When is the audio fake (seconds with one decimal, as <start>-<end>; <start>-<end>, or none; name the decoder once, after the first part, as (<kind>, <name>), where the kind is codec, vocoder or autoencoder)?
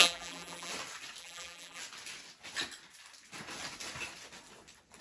0.0-0.7 (vocoder, BigVGAN v2); 1.2-1.8